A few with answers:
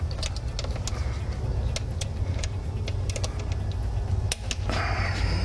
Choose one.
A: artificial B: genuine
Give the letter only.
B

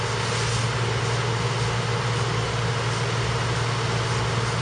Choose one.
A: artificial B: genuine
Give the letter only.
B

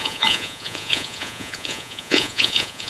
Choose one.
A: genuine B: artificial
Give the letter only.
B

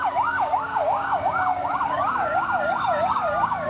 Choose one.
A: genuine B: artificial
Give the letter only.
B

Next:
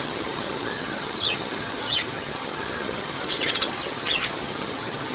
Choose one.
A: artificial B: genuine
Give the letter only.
A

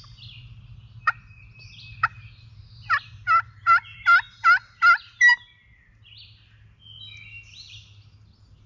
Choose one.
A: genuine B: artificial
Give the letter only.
A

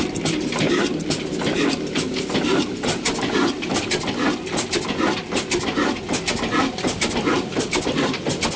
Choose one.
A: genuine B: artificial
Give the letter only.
A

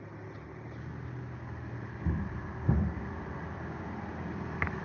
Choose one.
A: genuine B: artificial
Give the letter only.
A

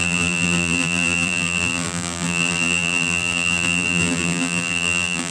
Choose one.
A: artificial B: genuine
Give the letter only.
A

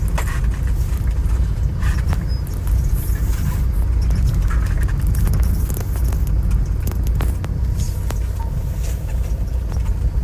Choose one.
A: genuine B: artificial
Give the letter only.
A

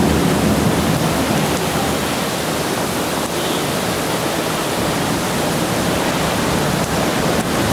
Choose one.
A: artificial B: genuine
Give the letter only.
B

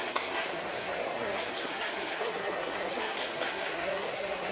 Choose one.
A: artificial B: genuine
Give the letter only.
A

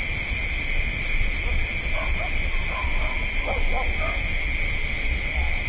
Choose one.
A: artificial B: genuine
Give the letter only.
B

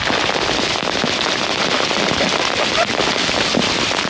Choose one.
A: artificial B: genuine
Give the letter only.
B